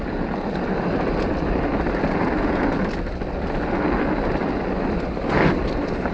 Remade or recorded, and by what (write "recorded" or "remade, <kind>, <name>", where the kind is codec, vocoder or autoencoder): recorded